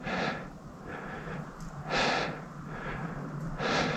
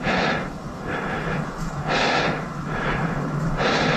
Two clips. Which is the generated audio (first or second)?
second